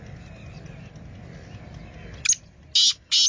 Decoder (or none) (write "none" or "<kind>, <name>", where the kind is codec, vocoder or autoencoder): none